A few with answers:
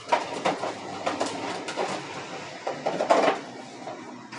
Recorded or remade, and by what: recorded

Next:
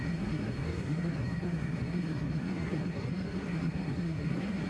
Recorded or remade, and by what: remade, codec, SNAC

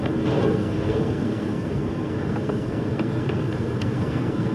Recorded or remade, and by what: remade, codec, SNAC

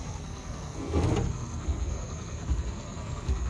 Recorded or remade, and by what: remade, codec, SNAC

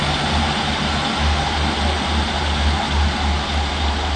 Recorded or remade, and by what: recorded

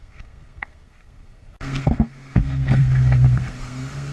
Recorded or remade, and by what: remade, codec, SNAC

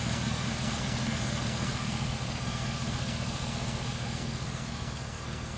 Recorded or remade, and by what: remade, codec, SNAC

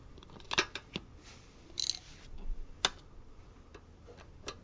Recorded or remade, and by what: recorded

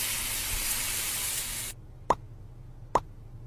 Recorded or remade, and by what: recorded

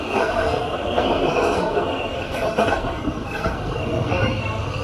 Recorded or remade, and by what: remade, codec, SNAC